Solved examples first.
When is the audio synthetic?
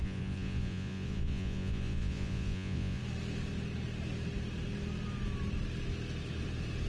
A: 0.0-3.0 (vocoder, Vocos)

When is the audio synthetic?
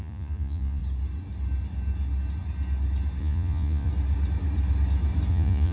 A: 0.0-0.8 (vocoder, Vocos); 3.2-3.9; 5.3-5.7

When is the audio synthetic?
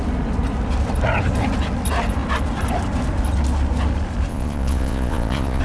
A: 4.3-5.6 (vocoder, Vocos)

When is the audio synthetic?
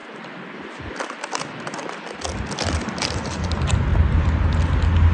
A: 0.0-3.1 (vocoder, BigVGAN v2); 3.9-4.4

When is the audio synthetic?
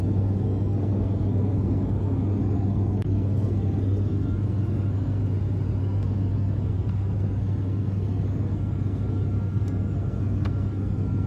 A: 0.0-5.2 (codec, SNAC); 5.8-11.3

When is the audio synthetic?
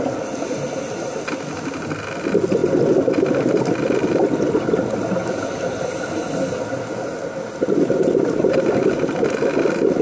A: none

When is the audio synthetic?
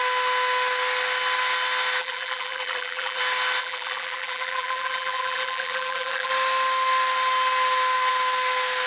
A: 2.0-3.2 (vocoder, BigVGAN v2); 3.6-6.3